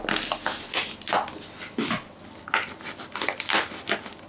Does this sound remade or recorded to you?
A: recorded